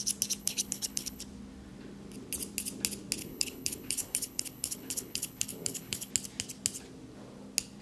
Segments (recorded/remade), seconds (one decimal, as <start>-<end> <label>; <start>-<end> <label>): 0.0-0.4 recorded; 0.4-1.2 remade; 1.2-3.2 recorded; 3.2-6.1 remade; 6.1-7.8 recorded